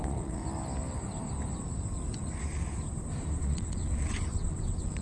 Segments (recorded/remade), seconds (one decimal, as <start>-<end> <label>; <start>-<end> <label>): 0.0-0.4 remade; 0.4-3.4 recorded; 3.4-5.0 remade

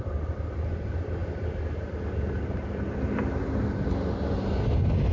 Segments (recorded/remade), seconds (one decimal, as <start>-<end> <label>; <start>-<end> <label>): 0.0-5.1 recorded

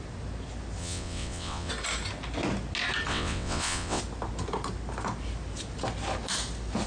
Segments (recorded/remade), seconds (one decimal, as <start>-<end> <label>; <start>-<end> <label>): 0.0-0.8 recorded; 0.8-1.7 remade; 1.7-3.1 recorded; 3.1-4.0 remade; 4.0-6.9 recorded

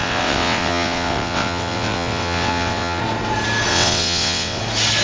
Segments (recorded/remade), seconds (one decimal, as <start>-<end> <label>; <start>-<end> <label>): 0.0-3.0 remade; 3.0-3.7 recorded; 3.7-4.6 remade; 4.6-5.0 recorded

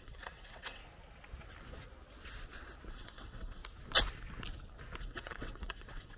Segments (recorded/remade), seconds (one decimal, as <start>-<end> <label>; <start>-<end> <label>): 0.0-0.8 remade; 0.8-2.9 recorded; 2.9-3.6 remade; 3.6-5.0 recorded; 5.0-6.2 remade

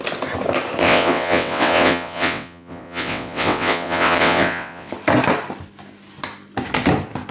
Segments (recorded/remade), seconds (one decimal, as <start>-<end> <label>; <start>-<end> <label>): 0.0-0.8 recorded; 0.8-4.9 remade; 4.9-7.3 recorded

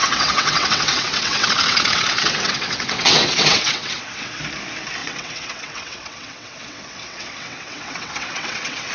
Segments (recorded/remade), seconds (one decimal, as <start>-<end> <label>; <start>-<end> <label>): 0.0-4.4 remade; 4.4-5.0 recorded; 5.0-8.9 remade